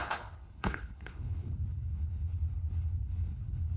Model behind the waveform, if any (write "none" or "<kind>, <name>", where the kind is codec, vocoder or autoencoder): codec, HILCodec